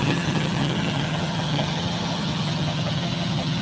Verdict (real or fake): fake